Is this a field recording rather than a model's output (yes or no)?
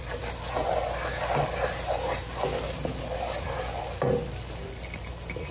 yes